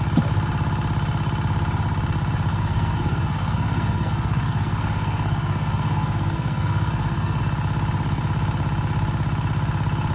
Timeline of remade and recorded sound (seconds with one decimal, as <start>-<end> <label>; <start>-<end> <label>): 0.0-2.5 recorded; 2.5-7.4 remade; 7.4-10.1 recorded